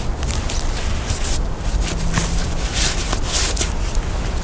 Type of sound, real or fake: real